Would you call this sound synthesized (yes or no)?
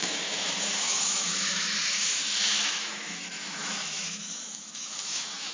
yes